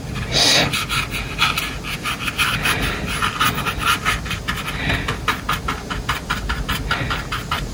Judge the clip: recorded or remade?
recorded